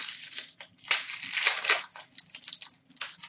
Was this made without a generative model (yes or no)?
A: yes